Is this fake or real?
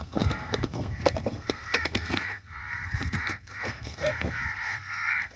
fake